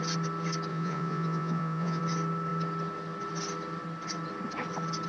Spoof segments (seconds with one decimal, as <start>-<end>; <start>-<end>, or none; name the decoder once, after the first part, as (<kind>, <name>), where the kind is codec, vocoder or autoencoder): 0.7-2.0 (vocoder, Vocos)